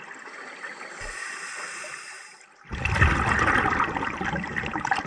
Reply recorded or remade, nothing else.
recorded